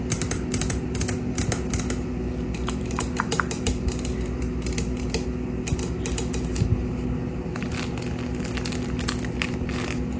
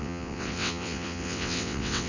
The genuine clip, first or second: first